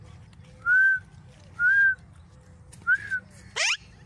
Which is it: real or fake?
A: real